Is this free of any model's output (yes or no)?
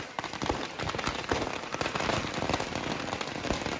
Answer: no